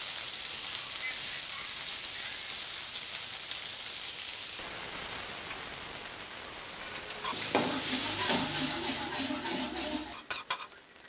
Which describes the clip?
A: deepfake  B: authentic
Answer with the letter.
B